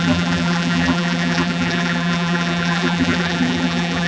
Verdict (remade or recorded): remade